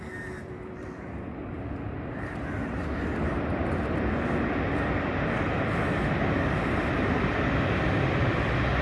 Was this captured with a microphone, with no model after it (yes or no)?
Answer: yes